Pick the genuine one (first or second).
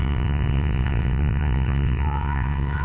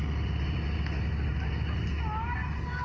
second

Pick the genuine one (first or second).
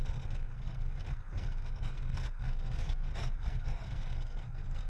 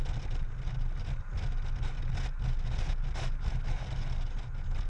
second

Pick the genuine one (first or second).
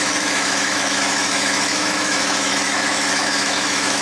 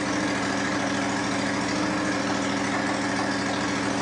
second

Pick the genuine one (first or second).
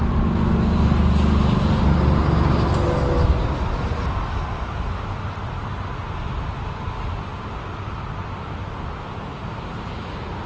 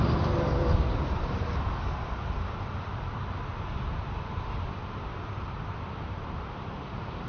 first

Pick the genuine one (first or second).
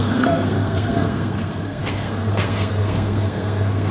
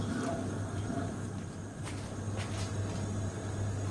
second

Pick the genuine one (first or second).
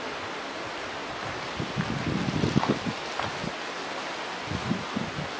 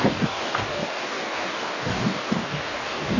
first